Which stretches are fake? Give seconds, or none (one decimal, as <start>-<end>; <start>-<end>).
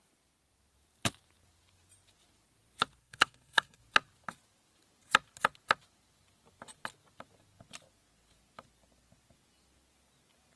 3.0-3.8